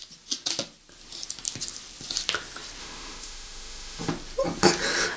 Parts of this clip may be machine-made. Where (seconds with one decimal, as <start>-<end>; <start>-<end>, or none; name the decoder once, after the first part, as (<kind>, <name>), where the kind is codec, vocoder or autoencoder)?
2.8-4.1 (autoencoder, DAC-VAE)